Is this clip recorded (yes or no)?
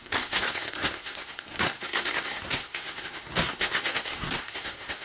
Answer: no